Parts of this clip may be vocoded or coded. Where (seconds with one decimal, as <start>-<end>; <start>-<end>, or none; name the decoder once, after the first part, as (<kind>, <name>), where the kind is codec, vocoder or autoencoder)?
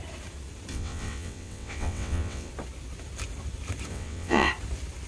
0.7-2.5 (vocoder, WaveNeXt); 3.9-4.5